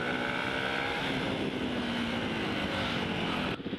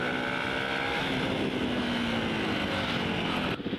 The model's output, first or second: first